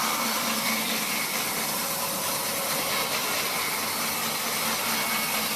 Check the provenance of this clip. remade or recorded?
recorded